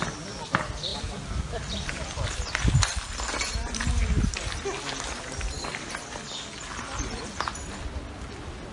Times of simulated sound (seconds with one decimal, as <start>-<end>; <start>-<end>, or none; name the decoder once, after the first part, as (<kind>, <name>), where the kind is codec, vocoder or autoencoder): 0.9-3.2 (vocoder, BigVGAN v2)